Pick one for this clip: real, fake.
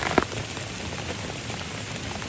real